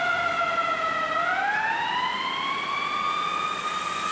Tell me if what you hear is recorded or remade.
recorded